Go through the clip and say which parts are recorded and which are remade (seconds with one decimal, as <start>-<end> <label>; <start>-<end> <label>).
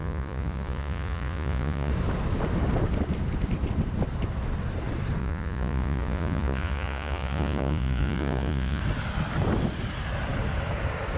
0.0-1.9 remade; 1.9-5.2 recorded; 5.2-8.8 remade; 8.8-11.2 recorded